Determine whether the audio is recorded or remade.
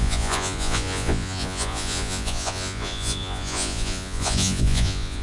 remade